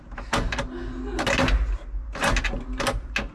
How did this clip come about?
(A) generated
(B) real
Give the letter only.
B